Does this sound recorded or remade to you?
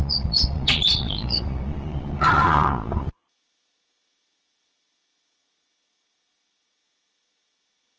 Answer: remade